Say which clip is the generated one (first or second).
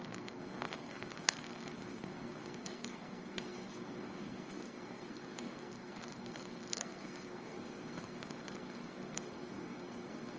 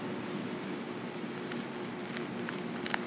first